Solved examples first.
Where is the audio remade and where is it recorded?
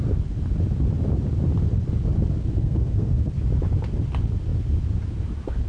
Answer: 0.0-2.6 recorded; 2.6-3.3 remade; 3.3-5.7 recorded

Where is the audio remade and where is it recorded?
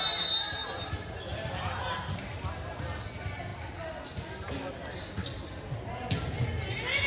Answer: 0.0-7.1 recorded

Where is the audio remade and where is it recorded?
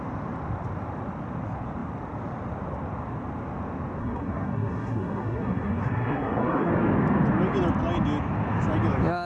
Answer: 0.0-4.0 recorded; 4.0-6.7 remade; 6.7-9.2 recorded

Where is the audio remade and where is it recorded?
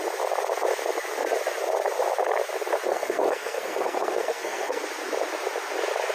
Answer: 0.0-2.9 recorded; 2.9-4.8 remade; 4.8-6.1 recorded